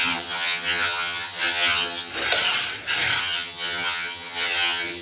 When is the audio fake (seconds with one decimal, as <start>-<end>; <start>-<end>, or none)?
0.0-2.1; 3.2-5.0